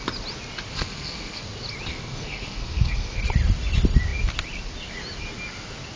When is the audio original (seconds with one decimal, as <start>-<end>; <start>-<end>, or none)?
0.0-0.7; 1.4-1.9; 3.2-6.0